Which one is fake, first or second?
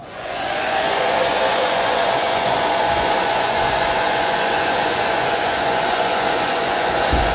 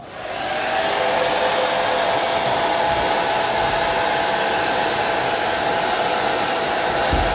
first